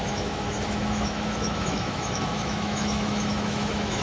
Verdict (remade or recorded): remade